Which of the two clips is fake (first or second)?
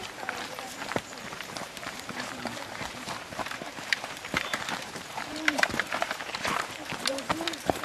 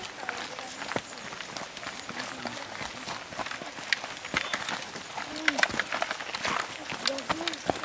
first